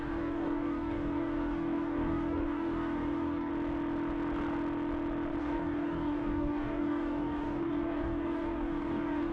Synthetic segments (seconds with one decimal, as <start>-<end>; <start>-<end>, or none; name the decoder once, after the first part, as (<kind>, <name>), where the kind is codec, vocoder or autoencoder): 0.0-3.5 (codec, DAC); 5.4-9.3